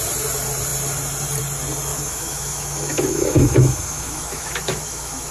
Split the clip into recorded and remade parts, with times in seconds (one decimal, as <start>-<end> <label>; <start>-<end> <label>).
0.0-1.9 recorded; 1.9-5.3 remade